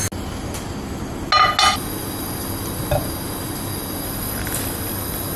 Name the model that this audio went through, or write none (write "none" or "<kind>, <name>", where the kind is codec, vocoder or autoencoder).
none